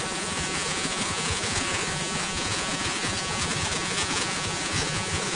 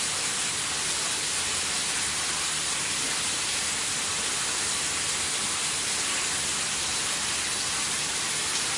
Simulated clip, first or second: first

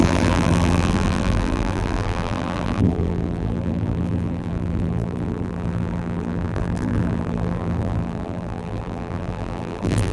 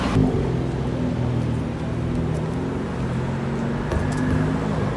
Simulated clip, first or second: first